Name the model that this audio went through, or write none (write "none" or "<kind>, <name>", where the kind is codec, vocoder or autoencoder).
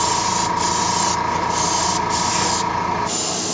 none